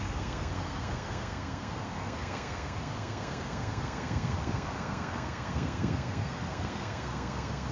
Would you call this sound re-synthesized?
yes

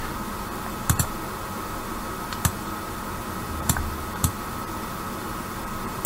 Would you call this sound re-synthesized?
no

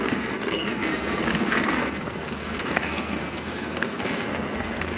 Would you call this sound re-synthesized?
yes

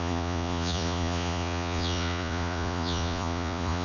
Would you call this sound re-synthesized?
yes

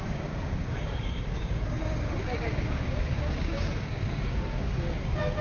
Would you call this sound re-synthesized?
yes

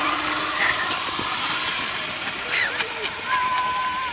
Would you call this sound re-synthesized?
no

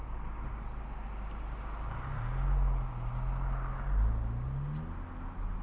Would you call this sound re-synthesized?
no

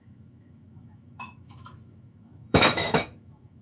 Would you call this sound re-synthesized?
yes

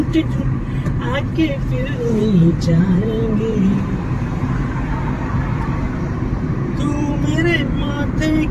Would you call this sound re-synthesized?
yes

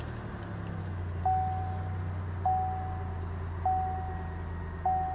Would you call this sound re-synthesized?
no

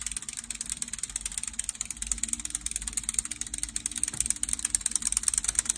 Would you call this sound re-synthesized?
no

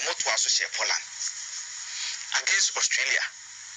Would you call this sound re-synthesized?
no